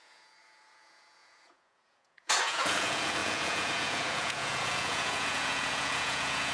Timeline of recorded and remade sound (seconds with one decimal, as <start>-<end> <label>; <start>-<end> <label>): 0.0-6.5 remade